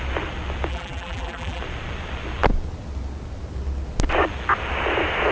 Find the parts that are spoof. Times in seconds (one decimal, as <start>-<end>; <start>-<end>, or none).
0.7-1.6